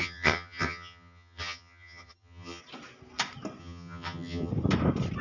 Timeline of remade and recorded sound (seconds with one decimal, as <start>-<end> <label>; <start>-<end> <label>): 0.0-2.6 remade; 2.6-3.6 recorded; 3.6-4.5 remade; 4.5-5.2 recorded

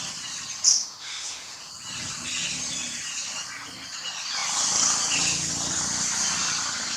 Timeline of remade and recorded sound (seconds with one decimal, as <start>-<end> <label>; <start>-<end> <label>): 0.0-0.7 recorded; 0.7-1.7 remade; 1.7-7.0 recorded